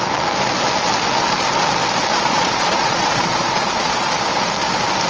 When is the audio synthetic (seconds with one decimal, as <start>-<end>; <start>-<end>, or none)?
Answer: 2.1-4.1